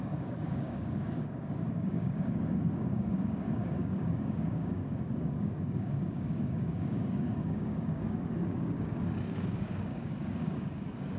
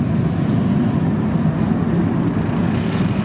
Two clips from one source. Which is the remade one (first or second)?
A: first